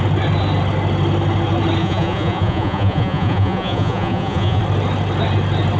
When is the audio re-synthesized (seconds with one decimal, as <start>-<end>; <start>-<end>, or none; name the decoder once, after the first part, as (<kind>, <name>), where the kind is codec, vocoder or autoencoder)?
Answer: 1.8-4.6 (vocoder, Vocos)

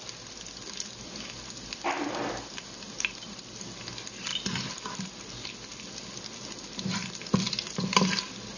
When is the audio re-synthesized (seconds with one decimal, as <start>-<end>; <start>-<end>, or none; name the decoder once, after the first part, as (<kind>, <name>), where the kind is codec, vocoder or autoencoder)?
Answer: none

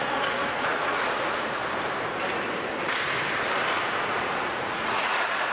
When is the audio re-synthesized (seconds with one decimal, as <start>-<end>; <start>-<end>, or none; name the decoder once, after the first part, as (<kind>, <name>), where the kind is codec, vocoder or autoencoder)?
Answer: 0.0-1.6 (vocoder, Vocos); 4.4-5.5

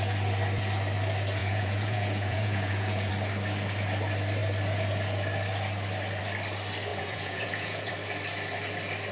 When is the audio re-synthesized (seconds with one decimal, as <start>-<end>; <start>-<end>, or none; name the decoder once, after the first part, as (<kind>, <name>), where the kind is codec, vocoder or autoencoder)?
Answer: 1.4-3.1 (vocoder, Vocos); 6.9-7.9

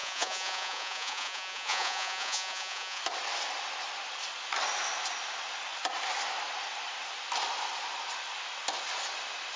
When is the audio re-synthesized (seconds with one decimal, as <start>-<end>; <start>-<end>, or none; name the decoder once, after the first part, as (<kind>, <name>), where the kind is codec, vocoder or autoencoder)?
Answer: 0.0-3.0 (vocoder, Vocos)

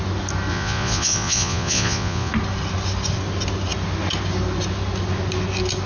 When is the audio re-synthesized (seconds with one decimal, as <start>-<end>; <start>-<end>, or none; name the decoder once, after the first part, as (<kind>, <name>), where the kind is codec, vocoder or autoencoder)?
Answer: 0.5-2.3 (vocoder, Vocos)

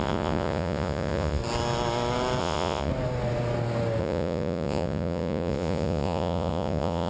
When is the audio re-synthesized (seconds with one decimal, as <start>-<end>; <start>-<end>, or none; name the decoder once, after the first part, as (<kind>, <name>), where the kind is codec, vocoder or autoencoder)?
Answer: 0.0-1.4 (vocoder, Vocos); 2.4-2.9; 4.0-7.1

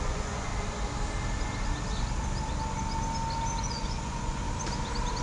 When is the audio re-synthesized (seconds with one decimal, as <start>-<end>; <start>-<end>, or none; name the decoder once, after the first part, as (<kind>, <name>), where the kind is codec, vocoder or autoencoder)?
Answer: 0.0-0.5 (vocoder, Vocos); 3.6-4.4